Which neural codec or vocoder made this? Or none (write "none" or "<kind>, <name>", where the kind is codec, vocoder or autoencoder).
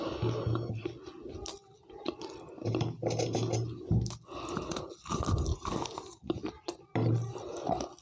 none